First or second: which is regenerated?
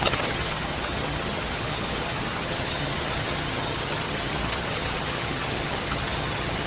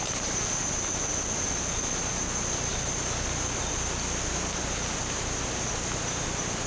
first